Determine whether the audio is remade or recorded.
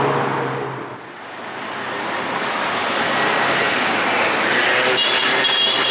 recorded